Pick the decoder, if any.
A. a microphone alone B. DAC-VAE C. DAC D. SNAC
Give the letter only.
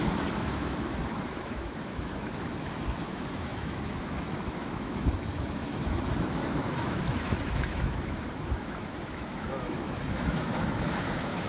B